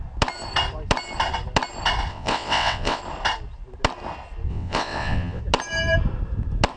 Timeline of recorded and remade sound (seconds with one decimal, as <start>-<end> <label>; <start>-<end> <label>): 0.0-2.1 recorded; 2.1-3.0 remade; 3.0-4.5 recorded; 4.5-5.4 remade; 5.4-6.8 recorded